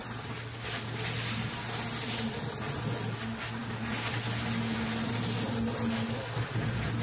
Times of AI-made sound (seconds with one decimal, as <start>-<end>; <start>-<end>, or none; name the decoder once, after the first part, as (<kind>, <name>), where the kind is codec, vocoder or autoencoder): none